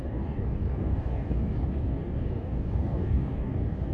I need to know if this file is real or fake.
fake